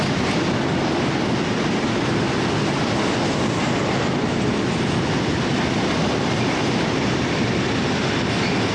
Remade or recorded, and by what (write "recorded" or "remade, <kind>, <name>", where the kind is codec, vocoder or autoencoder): recorded